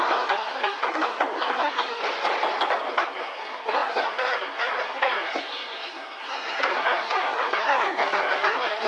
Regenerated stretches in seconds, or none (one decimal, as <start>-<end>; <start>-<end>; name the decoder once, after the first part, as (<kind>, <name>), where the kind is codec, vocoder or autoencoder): 0.0-2.0 (codec, SNAC); 2.9-8.9